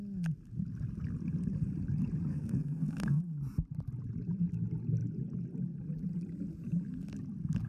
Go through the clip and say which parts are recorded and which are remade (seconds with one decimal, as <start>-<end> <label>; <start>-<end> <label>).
0.0-2.3 recorded; 2.3-3.2 remade; 3.2-7.7 recorded